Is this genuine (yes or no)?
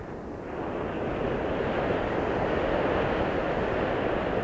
yes